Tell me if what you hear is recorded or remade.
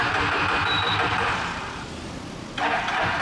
recorded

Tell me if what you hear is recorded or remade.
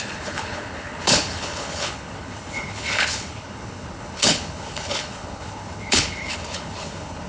remade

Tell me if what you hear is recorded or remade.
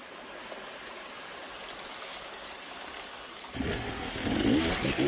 recorded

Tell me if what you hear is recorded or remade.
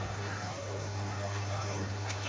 remade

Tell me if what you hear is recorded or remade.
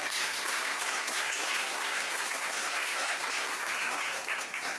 remade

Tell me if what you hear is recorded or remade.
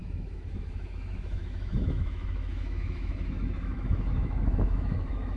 remade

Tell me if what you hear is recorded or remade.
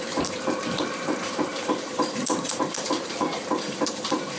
remade